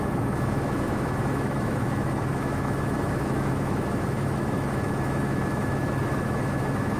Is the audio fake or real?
fake